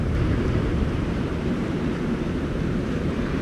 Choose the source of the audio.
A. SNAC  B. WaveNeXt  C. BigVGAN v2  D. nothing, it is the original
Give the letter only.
C